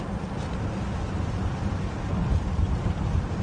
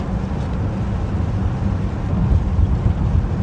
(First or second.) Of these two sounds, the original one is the second